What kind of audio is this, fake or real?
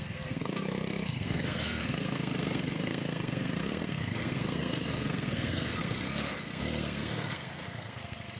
fake